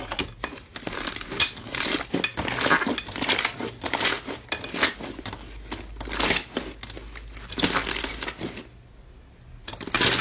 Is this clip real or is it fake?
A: real